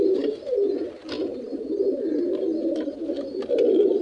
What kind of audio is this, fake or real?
real